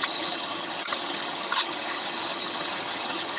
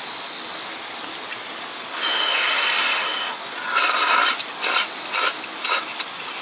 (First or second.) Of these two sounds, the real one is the second